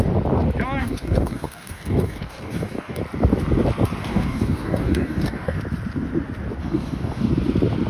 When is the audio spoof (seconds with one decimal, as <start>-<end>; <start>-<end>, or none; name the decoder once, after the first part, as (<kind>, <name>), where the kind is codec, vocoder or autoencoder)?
0.8-3.0 (codec, DAC); 4.0-5.6; 6.6-7.3

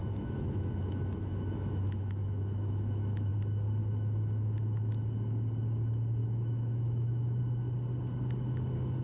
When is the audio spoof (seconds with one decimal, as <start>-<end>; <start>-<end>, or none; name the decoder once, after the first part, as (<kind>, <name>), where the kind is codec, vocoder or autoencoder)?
0.0-3.3 (autoencoder, DAC-VAE); 3.8-4.9; 6.2-7.4

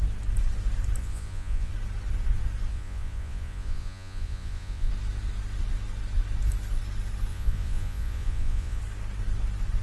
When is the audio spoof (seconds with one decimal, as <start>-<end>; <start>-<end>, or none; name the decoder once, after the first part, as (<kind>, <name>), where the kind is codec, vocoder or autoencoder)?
1.0-1.7 (vocoder, Vocos); 2.7-4.9; 7.3-8.8

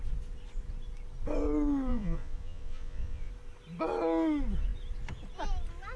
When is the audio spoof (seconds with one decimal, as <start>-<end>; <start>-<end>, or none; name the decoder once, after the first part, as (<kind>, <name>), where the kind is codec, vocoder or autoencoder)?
1.9-3.3 (vocoder, Vocos)

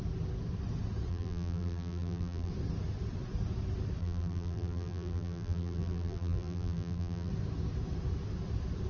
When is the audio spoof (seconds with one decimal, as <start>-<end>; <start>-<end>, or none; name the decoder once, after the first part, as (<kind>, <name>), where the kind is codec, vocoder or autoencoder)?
1.1-2.5 (vocoder, BigVGAN v2); 4.0-7.3

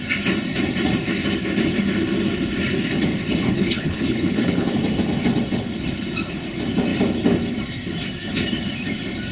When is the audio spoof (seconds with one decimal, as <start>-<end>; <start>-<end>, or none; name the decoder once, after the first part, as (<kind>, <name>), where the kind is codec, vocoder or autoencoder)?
3.4-4.8 (codec, HILCodec)

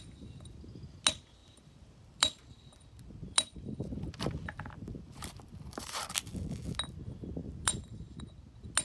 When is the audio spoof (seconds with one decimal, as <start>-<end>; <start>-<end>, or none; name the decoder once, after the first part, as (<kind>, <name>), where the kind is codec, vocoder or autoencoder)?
1.4-6.1 (vocoder, BigVGAN v2); 7.4-8.2

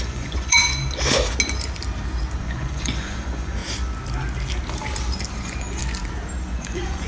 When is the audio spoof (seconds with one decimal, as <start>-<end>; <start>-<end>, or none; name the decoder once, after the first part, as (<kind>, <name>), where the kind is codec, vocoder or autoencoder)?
0.0-0.6 (vocoder, Vocos); 2.4-3.6; 5.3-5.8; 6.5-7.1